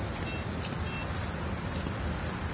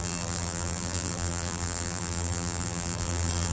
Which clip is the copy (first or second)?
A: second